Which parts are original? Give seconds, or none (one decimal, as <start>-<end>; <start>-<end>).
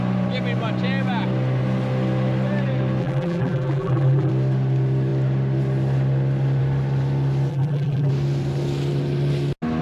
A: 0.0-3.0; 4.3-7.5; 8.1-9.8